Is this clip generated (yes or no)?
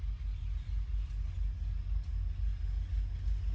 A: no